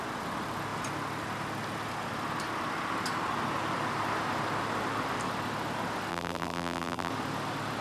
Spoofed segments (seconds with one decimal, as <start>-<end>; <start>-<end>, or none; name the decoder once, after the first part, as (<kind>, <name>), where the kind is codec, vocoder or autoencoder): 6.1-7.1 (vocoder, BigVGAN v2)